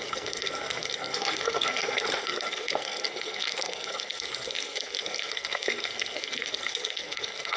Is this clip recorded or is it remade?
remade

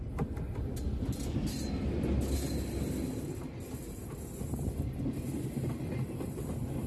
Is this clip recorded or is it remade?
recorded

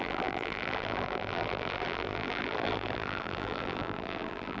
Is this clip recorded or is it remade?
remade